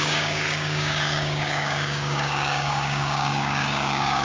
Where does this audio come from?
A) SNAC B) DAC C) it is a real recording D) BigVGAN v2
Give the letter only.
B